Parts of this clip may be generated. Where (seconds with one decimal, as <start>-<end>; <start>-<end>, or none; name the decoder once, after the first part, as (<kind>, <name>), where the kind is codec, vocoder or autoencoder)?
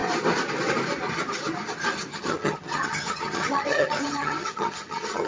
2.1-5.3 (vocoder, HiFi-GAN)